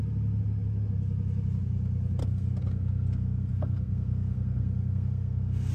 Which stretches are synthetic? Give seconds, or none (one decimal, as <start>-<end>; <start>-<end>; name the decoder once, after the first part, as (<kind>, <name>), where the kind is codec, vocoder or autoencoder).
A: 2.2-5.7 (codec, SNAC)